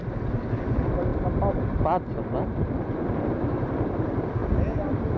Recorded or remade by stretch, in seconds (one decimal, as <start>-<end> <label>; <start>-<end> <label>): 0.0-4.4 recorded; 4.4-5.2 remade